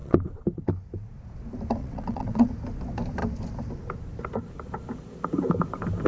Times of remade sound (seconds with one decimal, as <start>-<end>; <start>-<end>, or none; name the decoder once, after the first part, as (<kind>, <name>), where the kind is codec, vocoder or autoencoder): 0.0-0.7 (vocoder, WaveNeXt); 1.8-2.5